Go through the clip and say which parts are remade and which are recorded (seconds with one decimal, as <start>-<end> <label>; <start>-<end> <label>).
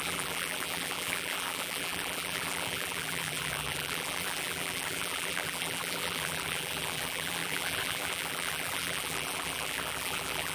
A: 0.0-10.5 remade